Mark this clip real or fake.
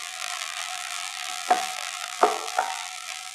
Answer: fake